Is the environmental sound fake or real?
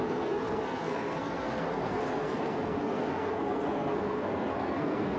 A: fake